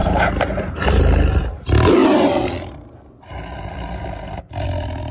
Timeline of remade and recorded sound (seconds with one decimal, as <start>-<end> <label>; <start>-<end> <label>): 0.0-5.1 recorded